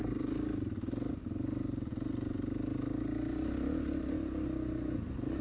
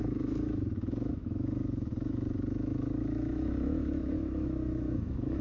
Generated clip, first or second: second